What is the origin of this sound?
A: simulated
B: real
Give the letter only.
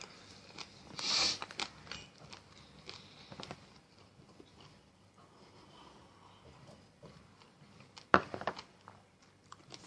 B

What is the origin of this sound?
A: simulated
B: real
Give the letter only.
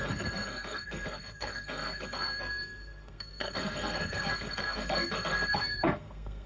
A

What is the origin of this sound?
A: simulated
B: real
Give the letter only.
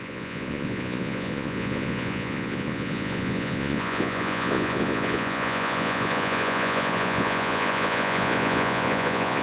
A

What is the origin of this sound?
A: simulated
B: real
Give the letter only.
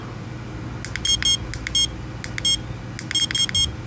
B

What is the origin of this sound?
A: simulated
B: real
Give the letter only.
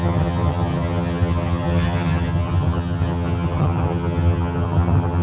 A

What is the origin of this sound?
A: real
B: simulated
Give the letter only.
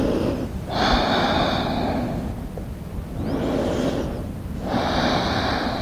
A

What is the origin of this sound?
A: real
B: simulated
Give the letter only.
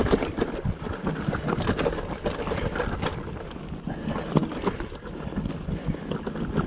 A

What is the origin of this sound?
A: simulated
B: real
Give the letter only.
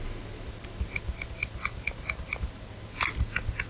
B